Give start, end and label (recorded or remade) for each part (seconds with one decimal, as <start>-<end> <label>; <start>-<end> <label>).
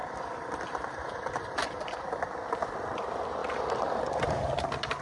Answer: 0.0-3.0 remade; 3.0-3.4 recorded; 3.4-4.3 remade; 4.3-5.0 recorded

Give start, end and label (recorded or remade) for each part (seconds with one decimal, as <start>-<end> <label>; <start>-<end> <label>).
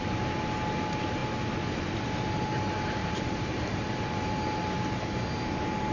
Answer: 0.0-3.0 recorded; 3.0-3.9 remade; 3.9-5.9 recorded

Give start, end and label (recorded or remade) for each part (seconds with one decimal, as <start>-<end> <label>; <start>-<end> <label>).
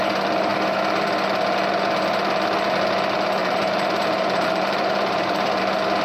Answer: 0.0-3.4 recorded; 3.4-5.6 remade; 5.6-6.0 recorded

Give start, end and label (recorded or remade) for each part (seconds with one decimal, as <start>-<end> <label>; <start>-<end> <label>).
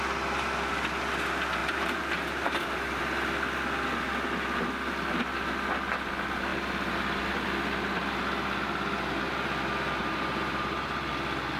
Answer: 0.0-1.6 recorded; 1.6-3.0 remade; 3.0-10.0 recorded; 10.0-11.1 remade; 11.1-11.6 recorded